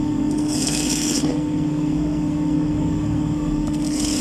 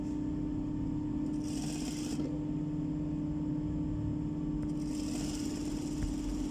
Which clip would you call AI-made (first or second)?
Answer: first